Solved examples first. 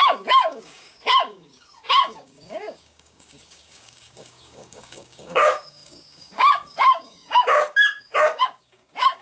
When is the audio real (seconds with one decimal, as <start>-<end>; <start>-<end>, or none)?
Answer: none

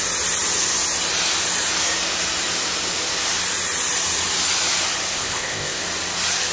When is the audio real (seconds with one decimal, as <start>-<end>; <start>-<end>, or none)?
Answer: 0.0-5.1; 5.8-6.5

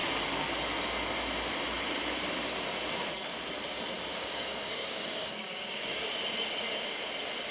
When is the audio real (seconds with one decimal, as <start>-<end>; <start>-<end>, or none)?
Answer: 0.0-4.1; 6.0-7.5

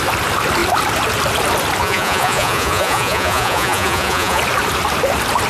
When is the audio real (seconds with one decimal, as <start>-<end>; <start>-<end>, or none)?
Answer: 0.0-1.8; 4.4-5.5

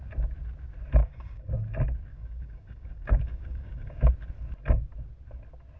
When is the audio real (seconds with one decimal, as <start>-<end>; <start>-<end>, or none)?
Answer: 0.0-1.0; 1.5-2.1; 4.1-5.8

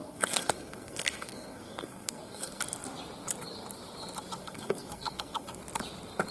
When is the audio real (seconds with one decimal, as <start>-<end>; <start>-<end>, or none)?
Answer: 2.6-4.4; 5.6-6.3